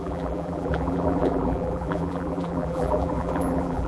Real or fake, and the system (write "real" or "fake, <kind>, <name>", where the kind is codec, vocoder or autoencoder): fake, vocoder, BigVGAN v2